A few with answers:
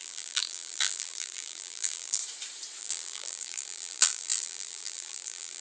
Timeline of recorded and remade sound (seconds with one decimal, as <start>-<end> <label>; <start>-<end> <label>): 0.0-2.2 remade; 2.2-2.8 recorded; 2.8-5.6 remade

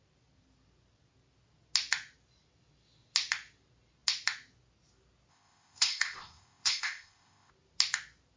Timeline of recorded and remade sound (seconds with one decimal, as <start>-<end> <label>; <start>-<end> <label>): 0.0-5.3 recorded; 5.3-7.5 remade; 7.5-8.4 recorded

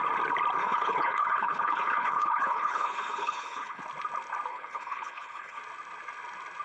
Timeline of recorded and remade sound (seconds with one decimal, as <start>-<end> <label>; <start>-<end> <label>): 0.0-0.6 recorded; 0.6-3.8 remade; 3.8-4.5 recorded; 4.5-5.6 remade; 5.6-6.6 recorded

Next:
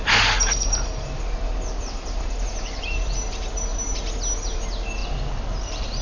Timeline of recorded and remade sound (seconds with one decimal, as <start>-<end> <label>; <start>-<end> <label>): 0.0-3.7 remade; 3.7-4.4 recorded; 4.4-5.0 remade; 5.0-5.6 recorded; 5.6-6.0 remade